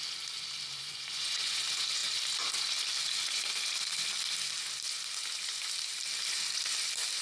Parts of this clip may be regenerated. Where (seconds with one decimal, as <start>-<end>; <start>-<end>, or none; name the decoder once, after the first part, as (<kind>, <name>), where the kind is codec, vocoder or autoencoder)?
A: 0.7-1.6 (vocoder, Vocos)